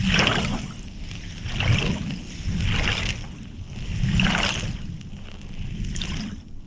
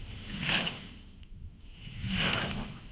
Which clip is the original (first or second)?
first